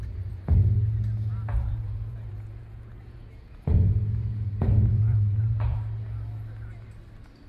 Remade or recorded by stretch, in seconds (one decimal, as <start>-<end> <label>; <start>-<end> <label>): 0.0-1.5 recorded; 1.5-5.8 remade; 5.8-7.5 recorded